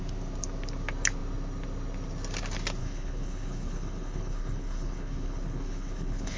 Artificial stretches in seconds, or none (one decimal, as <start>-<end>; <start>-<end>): 2.8-6.4